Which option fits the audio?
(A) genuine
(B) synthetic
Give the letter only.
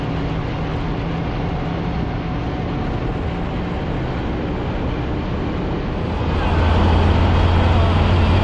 A